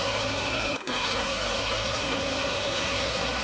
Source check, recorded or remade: remade